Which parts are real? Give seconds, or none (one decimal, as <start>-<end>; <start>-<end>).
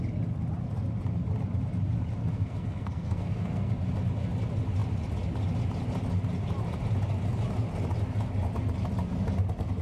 0.0-2.2; 3.7-9.8